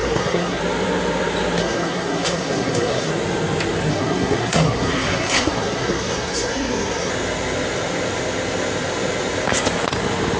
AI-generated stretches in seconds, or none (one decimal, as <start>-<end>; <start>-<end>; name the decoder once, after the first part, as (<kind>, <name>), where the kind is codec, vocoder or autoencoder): 0.0-0.6 (codec, SNAC); 1.6-3.1; 3.9-7.1